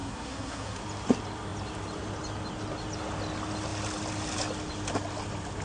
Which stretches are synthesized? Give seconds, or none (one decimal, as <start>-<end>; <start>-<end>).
0.0-0.8